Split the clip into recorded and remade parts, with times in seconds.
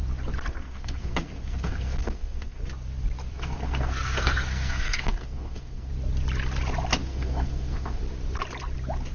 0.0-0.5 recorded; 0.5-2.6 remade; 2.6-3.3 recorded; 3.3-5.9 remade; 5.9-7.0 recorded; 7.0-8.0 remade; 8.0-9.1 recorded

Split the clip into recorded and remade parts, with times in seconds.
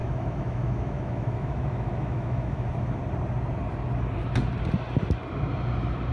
0.0-3.0 remade; 3.0-6.1 recorded